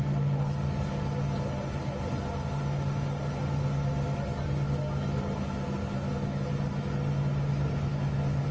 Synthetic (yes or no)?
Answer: no